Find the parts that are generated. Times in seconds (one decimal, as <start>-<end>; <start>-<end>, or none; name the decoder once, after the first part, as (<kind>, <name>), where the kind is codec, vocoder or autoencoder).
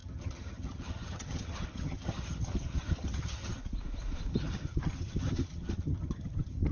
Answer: 0.0-3.6 (vocoder, HiFi-GAN); 4.3-6.7